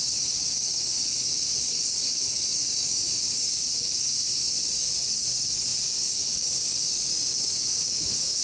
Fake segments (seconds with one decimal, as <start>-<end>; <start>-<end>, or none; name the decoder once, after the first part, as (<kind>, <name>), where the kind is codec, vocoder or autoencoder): 0.0-8.4 (codec, DAC)